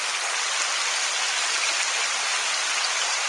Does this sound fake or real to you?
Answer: real